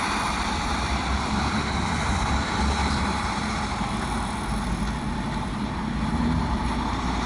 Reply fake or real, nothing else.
fake